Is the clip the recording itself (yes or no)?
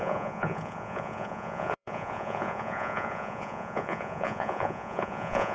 no